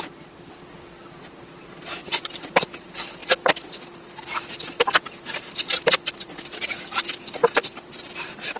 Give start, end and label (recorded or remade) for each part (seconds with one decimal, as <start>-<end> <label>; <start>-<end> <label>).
0.0-8.6 recorded